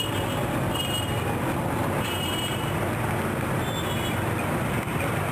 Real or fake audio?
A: fake